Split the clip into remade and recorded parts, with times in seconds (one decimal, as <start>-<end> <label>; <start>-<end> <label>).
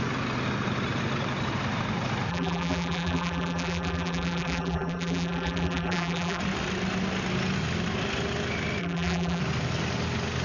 0.0-2.3 recorded; 2.3-6.4 remade; 6.4-8.8 recorded; 8.8-9.4 remade; 9.4-10.4 recorded